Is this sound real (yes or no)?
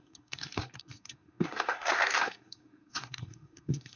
no